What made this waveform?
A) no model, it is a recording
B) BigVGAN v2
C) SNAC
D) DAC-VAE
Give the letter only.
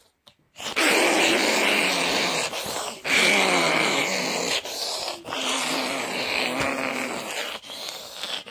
B